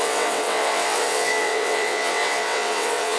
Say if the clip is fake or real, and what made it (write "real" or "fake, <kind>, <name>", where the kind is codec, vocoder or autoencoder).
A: fake, vocoder, WaveNeXt